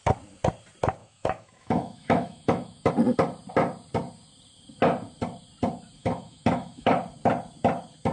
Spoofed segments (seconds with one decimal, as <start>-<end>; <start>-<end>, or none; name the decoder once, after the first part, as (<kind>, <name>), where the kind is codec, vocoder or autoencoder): 1.0-2.9 (autoencoder, DAC-VAE); 6.0-6.9